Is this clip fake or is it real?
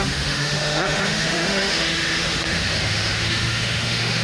fake